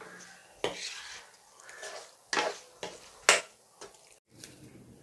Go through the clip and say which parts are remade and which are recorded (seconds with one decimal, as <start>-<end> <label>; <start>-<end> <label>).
0.0-5.0 recorded